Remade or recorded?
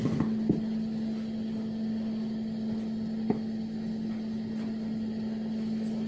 recorded